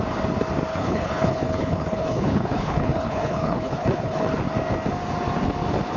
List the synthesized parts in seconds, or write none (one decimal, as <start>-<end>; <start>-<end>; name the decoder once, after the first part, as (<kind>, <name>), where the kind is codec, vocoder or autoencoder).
0.7-4.3 (codec, HILCodec)